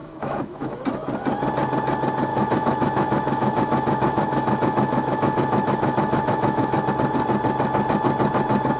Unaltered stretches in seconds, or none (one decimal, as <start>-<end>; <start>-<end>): 0.8-2.3; 6.9-8.8

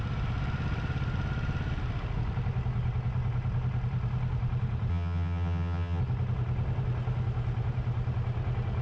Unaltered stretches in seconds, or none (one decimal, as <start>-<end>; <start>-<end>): 0.0-4.9; 6.0-8.8

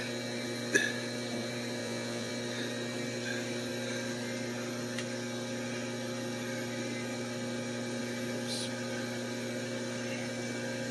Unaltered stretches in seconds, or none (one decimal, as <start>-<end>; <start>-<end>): 0.0-1.8; 2.3-10.9

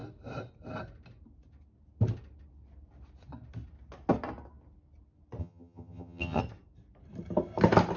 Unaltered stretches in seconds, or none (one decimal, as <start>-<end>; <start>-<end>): 0.0-5.4; 6.4-8.0

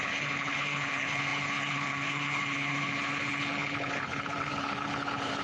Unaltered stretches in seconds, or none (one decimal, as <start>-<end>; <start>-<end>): none